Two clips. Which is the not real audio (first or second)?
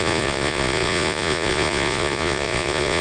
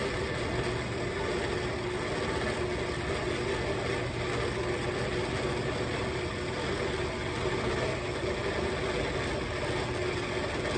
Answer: first